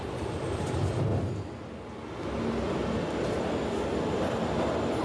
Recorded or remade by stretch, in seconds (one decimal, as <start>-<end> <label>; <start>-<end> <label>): 0.0-1.1 remade; 1.1-4.1 recorded; 4.1-5.0 remade